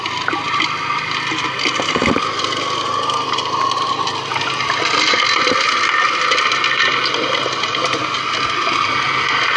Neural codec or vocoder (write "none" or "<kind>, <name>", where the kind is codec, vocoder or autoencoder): none